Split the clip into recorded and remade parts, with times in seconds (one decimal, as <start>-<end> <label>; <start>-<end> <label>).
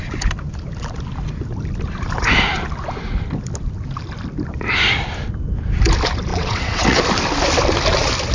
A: 0.0-6.3 recorded; 6.3-7.0 remade; 7.0-8.3 recorded